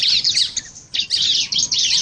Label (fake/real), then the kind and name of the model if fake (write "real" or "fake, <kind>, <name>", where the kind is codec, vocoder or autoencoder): real